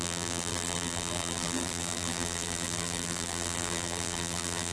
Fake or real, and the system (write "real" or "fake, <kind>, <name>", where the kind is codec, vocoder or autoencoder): fake, vocoder, BigVGAN v2